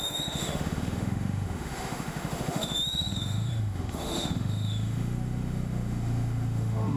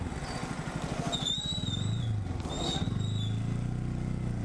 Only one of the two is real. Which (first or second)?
second